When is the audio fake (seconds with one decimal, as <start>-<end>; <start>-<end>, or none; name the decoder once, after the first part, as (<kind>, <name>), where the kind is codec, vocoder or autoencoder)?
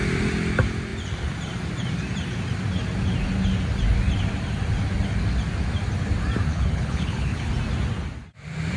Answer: 6.5-7.5 (codec, HILCodec)